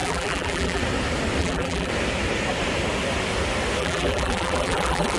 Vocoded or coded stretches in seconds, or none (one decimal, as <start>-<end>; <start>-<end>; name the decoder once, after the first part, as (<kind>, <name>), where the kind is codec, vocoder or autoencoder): 0.0-0.8 (vocoder, BigVGAN v2); 1.4-1.9; 3.8-5.2